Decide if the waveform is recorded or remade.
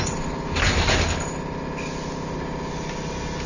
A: recorded